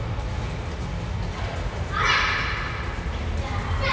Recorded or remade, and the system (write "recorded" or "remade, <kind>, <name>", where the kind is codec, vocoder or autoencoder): recorded